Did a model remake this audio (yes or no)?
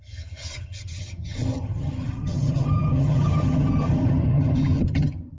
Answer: yes